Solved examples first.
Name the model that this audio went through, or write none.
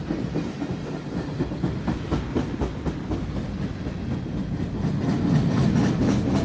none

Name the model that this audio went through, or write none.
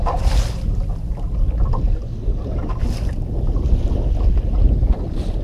none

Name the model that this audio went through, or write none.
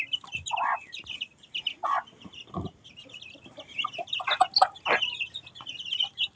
none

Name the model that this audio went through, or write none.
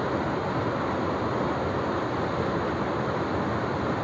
none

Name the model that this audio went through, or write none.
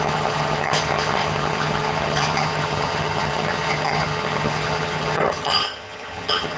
vocoder, HiFi-GAN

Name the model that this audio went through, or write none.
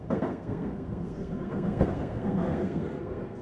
codec, SNAC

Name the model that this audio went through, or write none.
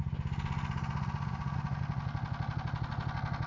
none